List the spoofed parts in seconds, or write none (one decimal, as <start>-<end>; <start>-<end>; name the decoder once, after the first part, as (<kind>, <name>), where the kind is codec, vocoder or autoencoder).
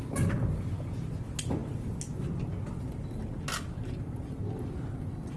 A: none